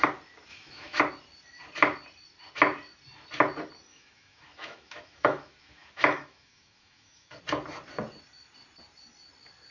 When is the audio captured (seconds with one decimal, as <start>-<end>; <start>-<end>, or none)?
0.0-0.5; 1.0-3.9; 7.4-9.7

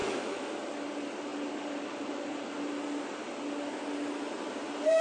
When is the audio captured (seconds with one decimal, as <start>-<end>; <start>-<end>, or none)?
0.5-5.0

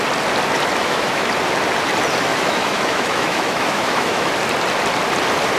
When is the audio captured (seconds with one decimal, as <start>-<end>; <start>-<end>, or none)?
0.0-0.8; 1.3-2.3; 4.3-5.6

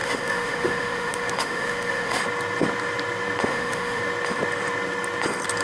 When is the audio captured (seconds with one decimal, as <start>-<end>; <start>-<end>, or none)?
2.2-3.5; 4.0-5.6

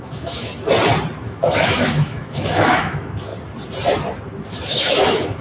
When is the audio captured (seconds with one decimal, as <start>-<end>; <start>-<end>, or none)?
0.5-1.2; 3.3-4.5

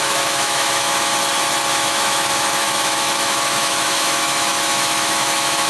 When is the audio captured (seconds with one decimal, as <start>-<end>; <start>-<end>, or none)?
1.1-1.7

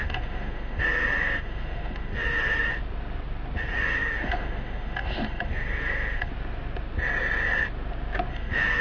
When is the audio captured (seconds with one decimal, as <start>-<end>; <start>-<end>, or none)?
2.7-3.7; 6.3-8.3